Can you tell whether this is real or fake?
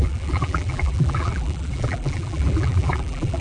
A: fake